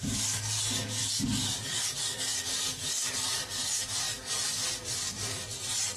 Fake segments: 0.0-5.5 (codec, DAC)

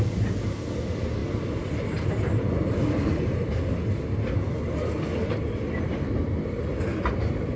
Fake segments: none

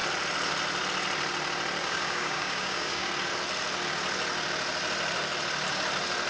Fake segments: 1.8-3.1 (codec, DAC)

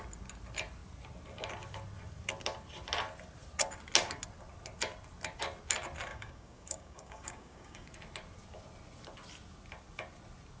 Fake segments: 6.1-7.9 (codec, DAC)